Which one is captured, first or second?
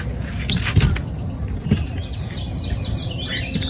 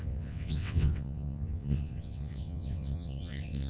first